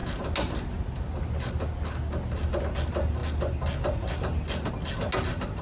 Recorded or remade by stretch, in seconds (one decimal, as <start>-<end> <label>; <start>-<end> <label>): 0.0-5.6 recorded